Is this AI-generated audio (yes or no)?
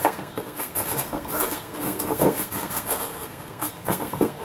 yes